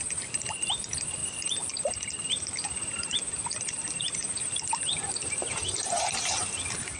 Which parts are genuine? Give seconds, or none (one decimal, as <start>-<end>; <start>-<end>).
1.2-5.4